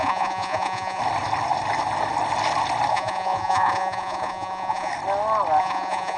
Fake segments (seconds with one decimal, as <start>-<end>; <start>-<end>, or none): 0.0-1.0; 2.9-4.9; 5.6-6.2